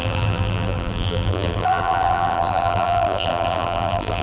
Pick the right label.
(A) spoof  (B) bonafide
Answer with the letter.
A